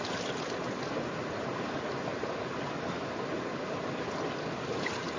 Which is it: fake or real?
real